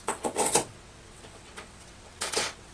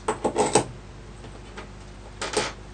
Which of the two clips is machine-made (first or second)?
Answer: first